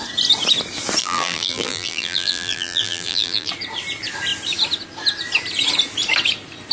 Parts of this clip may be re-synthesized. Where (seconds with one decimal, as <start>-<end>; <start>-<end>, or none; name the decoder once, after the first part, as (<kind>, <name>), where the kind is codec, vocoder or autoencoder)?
1.0-3.5 (vocoder, BigVGAN v2)